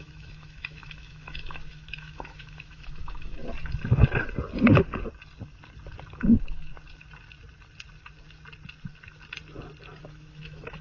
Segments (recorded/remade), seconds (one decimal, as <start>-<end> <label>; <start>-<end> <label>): 0.0-3.4 remade; 3.4-6.2 recorded; 6.2-6.7 remade; 6.7-10.0 recorded; 10.0-10.8 remade